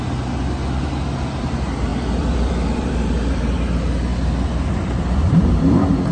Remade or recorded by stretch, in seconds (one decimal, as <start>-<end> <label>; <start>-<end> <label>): 0.0-1.9 recorded; 1.9-3.4 remade; 3.4-4.1 recorded; 4.1-6.1 remade